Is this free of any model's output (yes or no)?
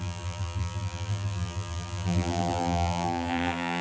no